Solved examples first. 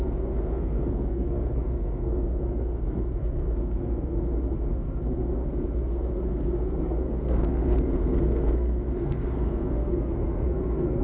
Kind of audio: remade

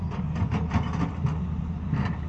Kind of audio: remade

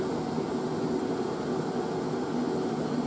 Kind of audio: recorded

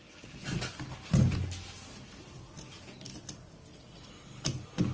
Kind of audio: recorded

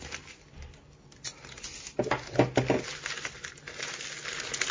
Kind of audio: recorded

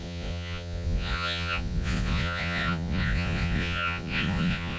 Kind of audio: remade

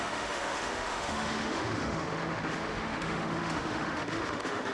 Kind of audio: remade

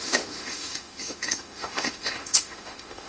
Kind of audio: remade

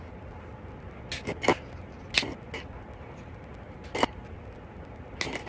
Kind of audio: recorded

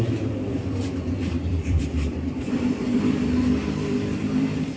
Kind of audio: remade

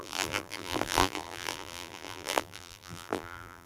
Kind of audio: remade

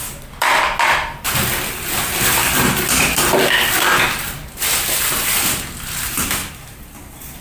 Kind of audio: recorded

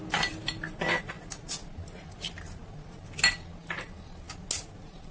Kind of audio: recorded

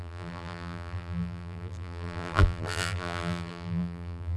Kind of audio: remade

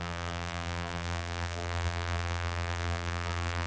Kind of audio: remade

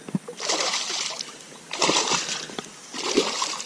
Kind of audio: recorded